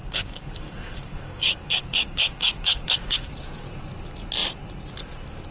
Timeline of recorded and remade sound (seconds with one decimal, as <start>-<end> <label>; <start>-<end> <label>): 0.0-3.3 remade; 3.3-5.5 recorded